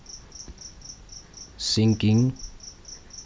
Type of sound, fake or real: real